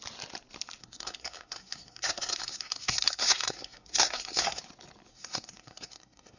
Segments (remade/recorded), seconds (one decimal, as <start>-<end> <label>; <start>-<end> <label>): 0.0-0.8 recorded; 0.8-4.6 remade; 4.6-5.1 recorded; 5.1-6.4 remade